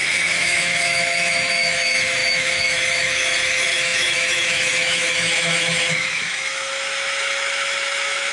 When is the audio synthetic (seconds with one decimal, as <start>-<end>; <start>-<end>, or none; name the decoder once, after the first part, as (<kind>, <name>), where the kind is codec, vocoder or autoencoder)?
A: 0.0-8.3 (autoencoder, DAC-VAE)